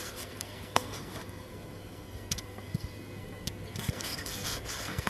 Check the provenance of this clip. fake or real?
fake